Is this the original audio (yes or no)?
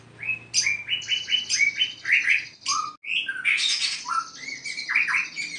yes